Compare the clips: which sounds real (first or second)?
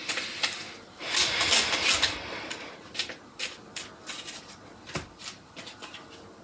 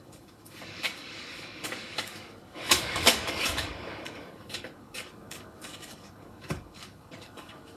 first